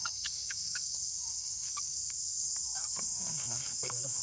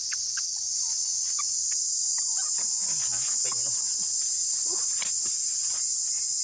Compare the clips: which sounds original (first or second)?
second